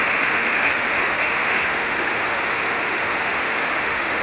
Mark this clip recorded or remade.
remade